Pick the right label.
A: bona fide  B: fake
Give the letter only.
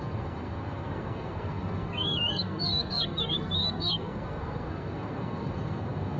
B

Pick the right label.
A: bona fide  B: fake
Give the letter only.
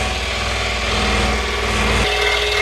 A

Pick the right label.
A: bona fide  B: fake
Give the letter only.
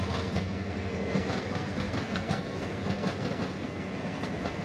B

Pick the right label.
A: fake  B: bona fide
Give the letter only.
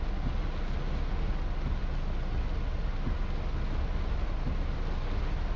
B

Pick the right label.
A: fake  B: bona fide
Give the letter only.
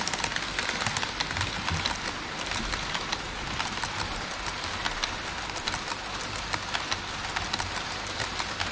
B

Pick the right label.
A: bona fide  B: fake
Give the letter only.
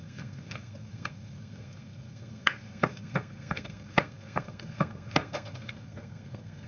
B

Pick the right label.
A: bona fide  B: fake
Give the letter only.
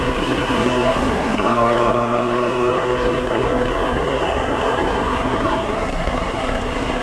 B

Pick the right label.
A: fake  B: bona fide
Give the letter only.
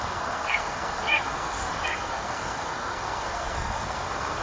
A